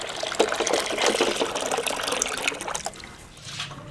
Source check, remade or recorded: recorded